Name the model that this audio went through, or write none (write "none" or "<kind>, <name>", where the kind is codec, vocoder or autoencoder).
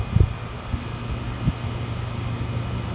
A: none